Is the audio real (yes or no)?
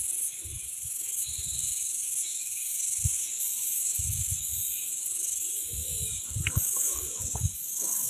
no